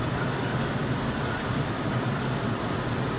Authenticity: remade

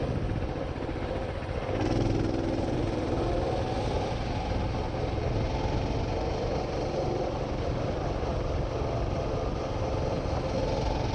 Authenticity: recorded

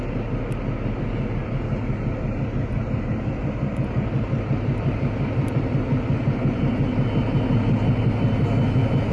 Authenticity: recorded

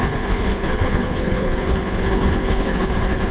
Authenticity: remade